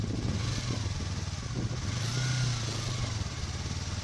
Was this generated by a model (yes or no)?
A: no